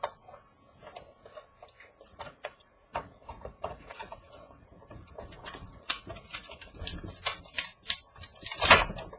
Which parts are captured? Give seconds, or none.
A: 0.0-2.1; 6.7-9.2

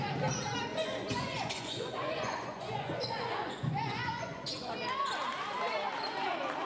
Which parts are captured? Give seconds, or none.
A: 0.0-0.7; 4.7-6.7

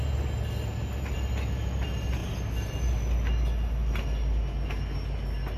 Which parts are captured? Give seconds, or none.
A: 0.0-5.6

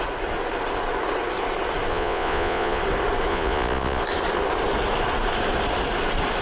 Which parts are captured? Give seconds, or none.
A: 0.0-1.9; 2.8-3.3; 4.0-6.4

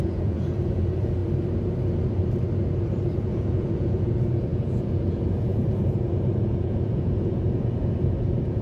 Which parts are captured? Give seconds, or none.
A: 1.2-3.2